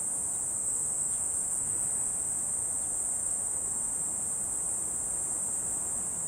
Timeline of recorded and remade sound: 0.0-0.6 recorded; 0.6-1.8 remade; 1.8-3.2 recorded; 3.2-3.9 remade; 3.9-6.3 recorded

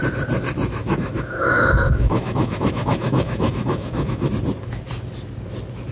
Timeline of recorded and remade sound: 0.0-0.8 recorded; 0.8-4.3 remade; 4.3-5.9 recorded

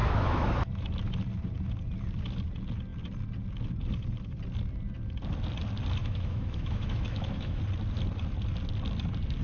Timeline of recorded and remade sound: 0.0-0.5 remade; 0.5-6.0 recorded; 6.0-7.6 remade; 7.6-9.4 recorded

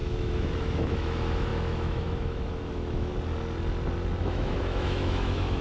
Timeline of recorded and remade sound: 0.0-3.1 remade; 3.1-4.2 recorded; 4.2-5.6 remade